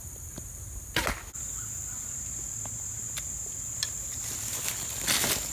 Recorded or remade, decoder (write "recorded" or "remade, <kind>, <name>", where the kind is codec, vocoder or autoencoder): recorded